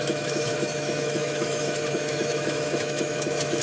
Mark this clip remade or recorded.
remade